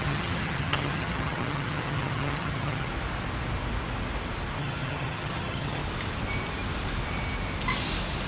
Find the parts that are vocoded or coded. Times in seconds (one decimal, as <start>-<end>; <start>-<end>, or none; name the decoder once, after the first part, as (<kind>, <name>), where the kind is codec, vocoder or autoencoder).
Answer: 0.0-2.9 (vocoder, HiFi-GAN); 4.6-5.8